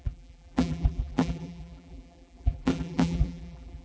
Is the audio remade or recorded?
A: remade